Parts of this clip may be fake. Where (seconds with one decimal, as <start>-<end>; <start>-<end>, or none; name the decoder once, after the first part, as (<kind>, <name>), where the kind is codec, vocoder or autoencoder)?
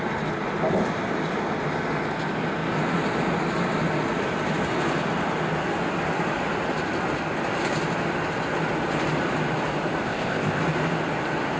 10.0-10.6 (codec, ZipCodec)